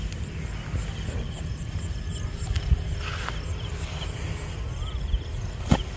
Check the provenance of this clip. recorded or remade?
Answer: recorded